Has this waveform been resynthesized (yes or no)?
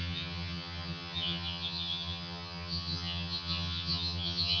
yes